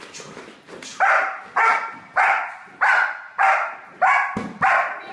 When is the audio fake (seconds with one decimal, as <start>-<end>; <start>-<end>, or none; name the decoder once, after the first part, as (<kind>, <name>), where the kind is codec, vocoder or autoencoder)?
none